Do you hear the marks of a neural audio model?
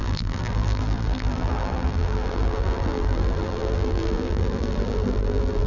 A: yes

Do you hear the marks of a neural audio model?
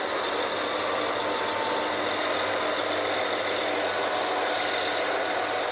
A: no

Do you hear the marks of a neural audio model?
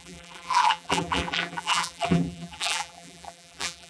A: yes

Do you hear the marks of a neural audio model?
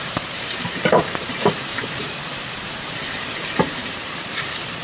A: yes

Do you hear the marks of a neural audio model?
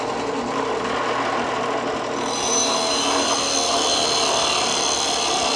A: no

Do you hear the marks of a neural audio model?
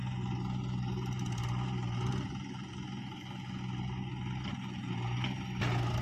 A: no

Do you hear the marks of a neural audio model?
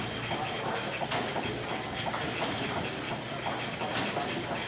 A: no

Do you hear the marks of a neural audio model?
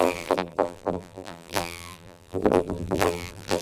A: yes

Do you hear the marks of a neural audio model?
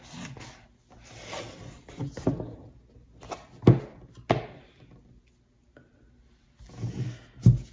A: no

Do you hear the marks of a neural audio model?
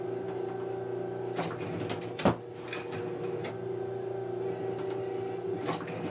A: no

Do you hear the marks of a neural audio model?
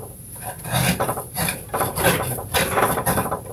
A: yes